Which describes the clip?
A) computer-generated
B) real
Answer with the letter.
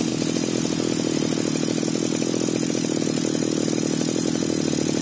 B